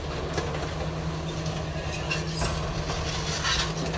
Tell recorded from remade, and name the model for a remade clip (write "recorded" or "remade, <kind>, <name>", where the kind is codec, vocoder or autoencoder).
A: recorded